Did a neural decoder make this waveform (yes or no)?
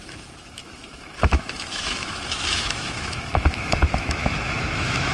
yes